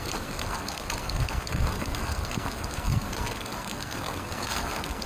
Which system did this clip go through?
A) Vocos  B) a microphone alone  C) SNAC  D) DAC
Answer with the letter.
C